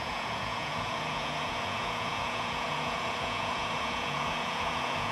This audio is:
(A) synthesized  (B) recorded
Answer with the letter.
A